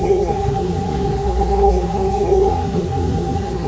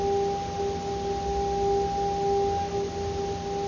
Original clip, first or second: second